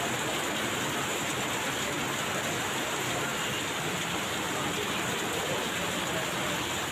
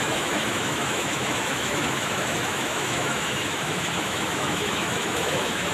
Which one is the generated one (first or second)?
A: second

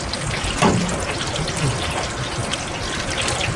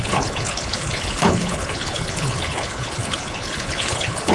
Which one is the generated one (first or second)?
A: second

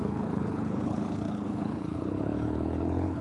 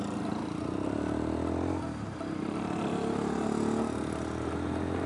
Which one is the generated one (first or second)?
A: first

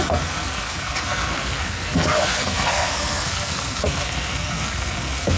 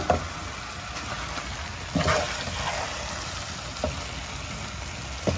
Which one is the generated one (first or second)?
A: first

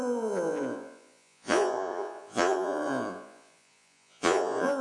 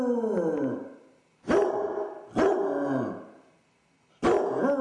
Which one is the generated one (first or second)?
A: first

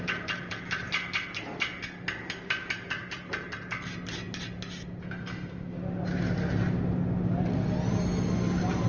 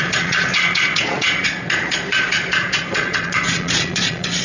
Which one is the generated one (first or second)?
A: second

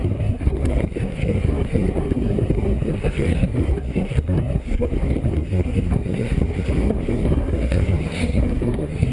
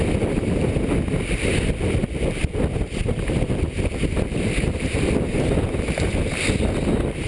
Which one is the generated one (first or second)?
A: first